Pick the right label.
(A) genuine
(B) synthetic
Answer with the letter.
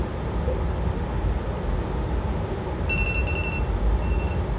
A